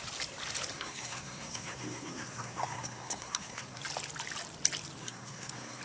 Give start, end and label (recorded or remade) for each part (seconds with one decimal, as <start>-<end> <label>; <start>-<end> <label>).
0.0-0.7 recorded; 0.7-3.8 remade; 3.8-5.0 recorded; 5.0-5.8 remade